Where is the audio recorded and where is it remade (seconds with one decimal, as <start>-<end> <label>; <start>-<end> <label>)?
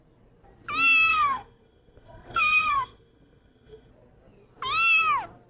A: 0.0-1.1 recorded; 1.1-3.9 remade; 3.9-5.5 recorded